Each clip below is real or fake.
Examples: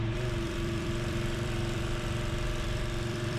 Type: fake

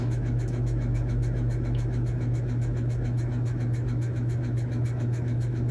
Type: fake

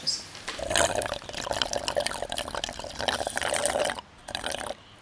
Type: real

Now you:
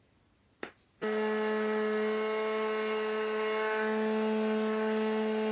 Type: real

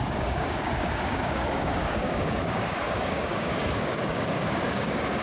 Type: fake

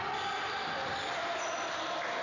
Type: real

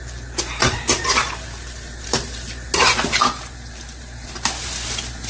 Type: real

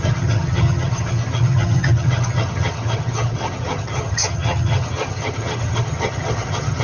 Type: fake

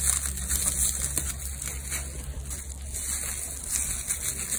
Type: real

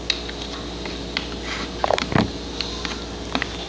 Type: real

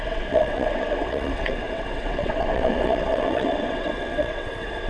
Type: fake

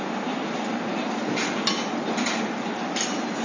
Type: real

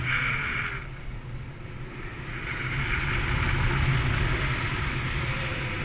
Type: real